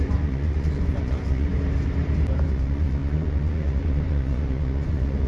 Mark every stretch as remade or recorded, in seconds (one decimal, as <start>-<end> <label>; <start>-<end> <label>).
0.0-1.5 remade; 1.5-2.5 recorded; 2.5-5.3 remade